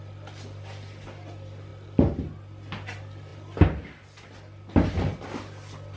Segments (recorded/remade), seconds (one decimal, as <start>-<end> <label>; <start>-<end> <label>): 0.0-6.0 recorded